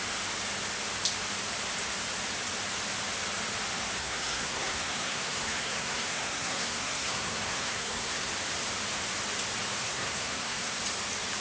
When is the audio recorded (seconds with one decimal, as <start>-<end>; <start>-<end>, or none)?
0.0-4.0; 8.3-9.8; 10.8-11.4